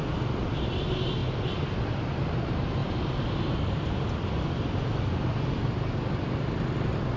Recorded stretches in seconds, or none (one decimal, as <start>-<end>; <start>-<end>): 0.0-1.2; 2.3-2.8; 5.3-7.2

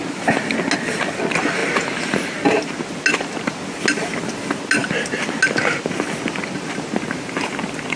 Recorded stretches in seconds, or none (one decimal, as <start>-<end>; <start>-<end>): 0.0-8.0

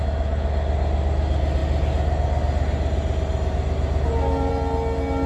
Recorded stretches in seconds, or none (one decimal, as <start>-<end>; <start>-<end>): 0.0-5.3

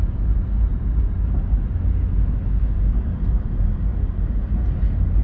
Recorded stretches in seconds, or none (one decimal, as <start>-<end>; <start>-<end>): 0.0-5.2

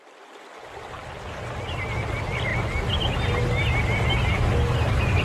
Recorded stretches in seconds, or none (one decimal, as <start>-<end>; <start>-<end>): 0.0-5.2

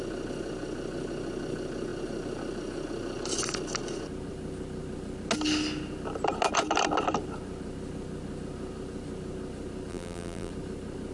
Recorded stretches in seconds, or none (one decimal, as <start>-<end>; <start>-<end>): 0.0-9.9; 10.5-11.1

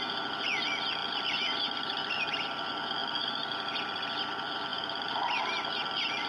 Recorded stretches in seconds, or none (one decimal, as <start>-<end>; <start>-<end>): 0.0-1.0; 2.6-3.0; 3.7-4.7; 5.4-6.3

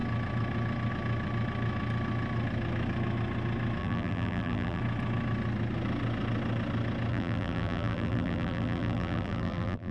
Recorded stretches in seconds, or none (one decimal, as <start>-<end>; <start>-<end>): 0.0-3.8; 4.8-7.1